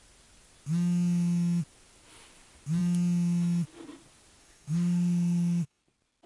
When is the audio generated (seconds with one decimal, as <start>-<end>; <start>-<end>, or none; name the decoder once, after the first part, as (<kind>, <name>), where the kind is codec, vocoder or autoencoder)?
4.4-5.8 (autoencoder, DAC-VAE)